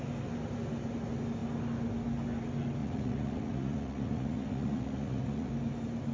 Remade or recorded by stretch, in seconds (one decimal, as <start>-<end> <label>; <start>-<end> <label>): 0.0-2.8 recorded; 2.8-5.5 remade; 5.5-6.1 recorded